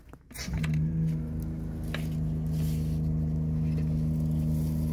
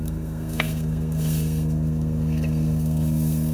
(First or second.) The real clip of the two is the first